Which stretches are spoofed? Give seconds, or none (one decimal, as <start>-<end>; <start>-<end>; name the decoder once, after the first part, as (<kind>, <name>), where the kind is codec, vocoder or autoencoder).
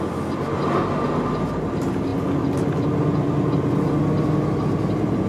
none